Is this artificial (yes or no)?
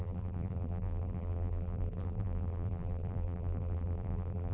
yes